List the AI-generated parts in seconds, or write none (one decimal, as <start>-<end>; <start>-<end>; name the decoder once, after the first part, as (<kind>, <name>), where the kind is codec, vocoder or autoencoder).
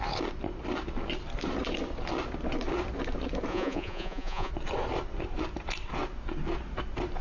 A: 3.5-4.5 (vocoder, Vocos)